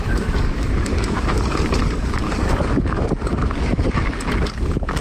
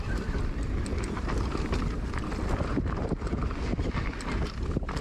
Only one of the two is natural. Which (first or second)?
second